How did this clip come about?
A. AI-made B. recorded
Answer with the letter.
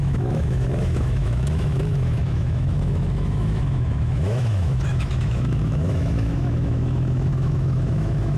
A